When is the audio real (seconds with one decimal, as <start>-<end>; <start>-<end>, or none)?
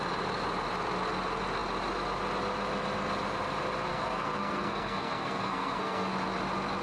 0.0-3.9; 6.1-6.8